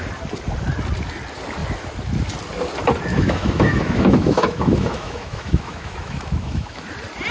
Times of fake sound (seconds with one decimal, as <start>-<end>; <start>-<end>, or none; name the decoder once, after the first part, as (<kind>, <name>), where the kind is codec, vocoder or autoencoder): 3.1-6.8 (autoencoder, DAC-VAE)